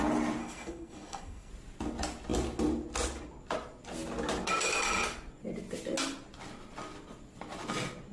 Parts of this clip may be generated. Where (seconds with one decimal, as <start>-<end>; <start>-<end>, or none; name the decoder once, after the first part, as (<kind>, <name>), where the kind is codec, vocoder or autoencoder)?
0.4-1.5 (codec, SNAC)